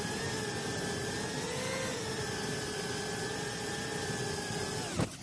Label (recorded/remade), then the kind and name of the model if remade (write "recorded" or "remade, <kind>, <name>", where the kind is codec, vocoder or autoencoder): recorded